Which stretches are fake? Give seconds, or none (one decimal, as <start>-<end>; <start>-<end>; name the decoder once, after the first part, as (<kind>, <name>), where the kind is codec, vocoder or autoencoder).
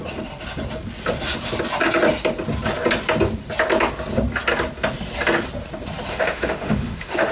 6.1-7.3 (autoencoder, DAC-VAE)